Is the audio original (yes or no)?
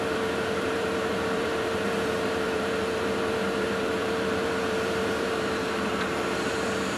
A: no